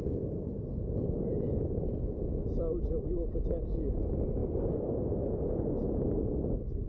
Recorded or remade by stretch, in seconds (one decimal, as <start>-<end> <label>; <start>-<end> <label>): 0.0-6.9 recorded

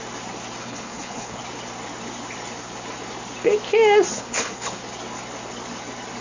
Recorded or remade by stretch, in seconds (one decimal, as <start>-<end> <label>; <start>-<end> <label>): 0.0-0.6 recorded; 0.6-1.4 remade; 1.4-4.1 recorded; 4.1-4.8 remade; 4.8-6.2 recorded